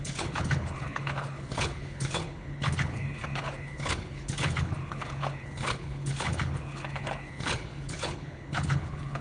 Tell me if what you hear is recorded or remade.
remade